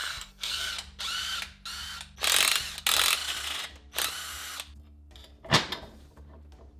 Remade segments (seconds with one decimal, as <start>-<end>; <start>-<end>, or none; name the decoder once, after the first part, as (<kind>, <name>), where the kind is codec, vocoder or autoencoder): 0.0-0.7 (codec, SNAC)